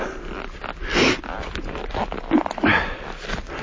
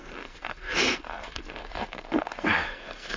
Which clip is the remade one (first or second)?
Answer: second